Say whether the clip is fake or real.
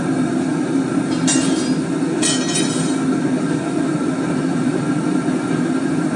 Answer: fake